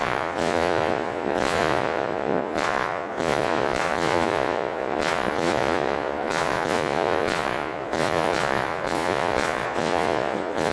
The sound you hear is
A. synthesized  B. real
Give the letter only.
A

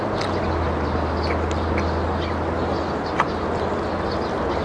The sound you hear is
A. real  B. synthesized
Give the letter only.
A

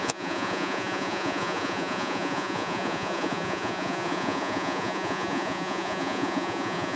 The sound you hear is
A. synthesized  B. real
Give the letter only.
A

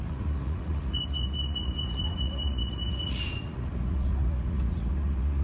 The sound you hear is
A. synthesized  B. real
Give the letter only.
A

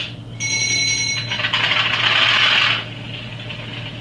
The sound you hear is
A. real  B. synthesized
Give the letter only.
A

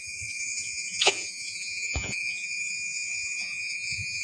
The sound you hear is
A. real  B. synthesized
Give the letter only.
B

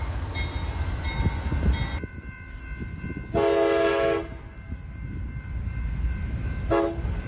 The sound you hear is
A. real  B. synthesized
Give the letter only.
A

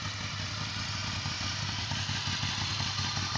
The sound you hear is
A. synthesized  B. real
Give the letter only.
B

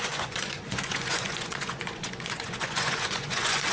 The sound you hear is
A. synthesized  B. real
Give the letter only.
A